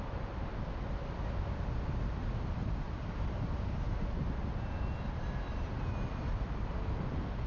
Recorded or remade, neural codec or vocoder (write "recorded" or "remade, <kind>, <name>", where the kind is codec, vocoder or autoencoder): recorded